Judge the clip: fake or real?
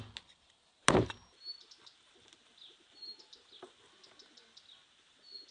real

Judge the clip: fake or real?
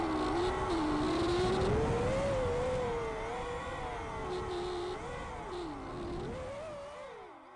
real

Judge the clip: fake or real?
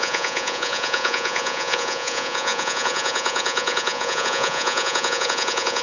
fake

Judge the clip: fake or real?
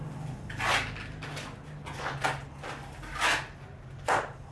real